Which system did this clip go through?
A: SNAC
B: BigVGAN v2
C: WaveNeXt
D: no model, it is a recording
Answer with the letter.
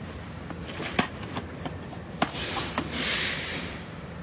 B